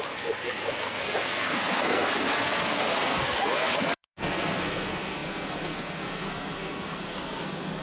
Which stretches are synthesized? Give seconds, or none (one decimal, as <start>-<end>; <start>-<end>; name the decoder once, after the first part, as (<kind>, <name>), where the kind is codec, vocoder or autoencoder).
0.0-7.8 (codec, SNAC)